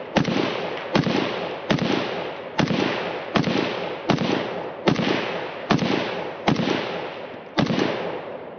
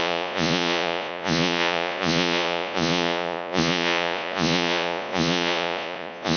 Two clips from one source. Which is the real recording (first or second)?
first